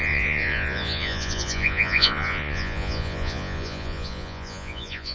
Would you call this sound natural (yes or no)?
no